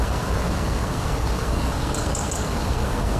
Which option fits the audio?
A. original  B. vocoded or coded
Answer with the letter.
B